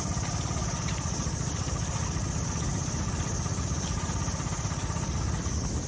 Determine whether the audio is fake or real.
real